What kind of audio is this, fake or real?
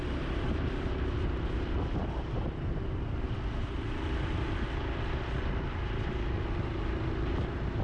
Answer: real